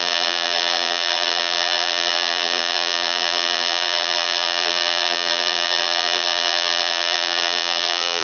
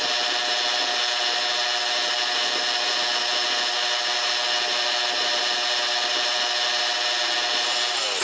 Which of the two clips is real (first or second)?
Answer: second